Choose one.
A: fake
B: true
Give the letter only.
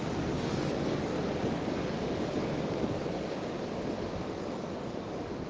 A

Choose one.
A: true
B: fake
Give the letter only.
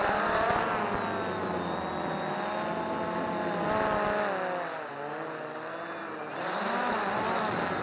A